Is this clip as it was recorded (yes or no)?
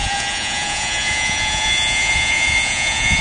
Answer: no